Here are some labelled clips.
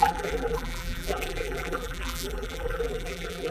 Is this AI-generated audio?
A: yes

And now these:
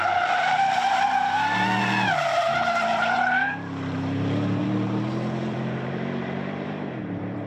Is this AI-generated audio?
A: yes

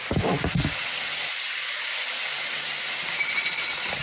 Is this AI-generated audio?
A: yes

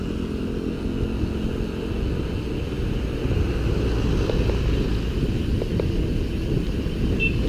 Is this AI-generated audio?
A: no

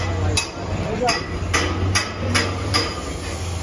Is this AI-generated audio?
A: no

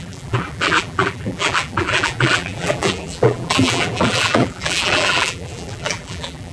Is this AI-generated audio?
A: yes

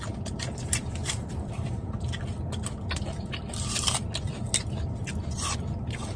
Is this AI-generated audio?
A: yes